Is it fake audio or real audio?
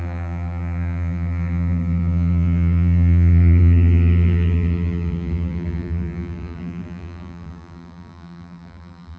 fake